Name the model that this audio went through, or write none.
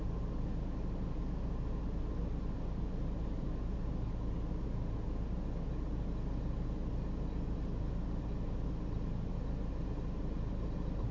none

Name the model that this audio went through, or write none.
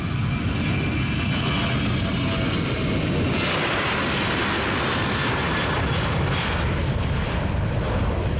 none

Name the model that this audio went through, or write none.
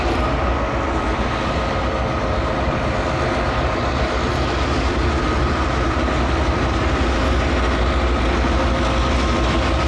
none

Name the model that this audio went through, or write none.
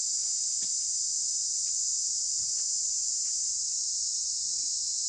none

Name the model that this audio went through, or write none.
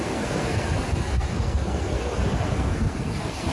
codec, SNAC